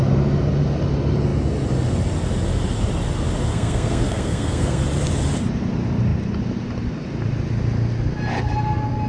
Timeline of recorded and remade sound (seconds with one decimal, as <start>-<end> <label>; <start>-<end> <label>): 0.0-3.5 recorded; 3.5-4.8 remade; 4.8-9.1 recorded